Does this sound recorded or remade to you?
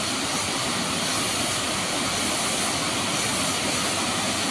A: recorded